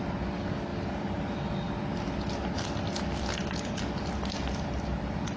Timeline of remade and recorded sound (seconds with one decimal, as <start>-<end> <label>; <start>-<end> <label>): 0.0-5.4 recorded